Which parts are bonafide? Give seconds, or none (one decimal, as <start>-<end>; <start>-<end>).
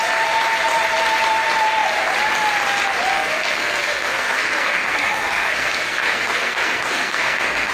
0.0-3.1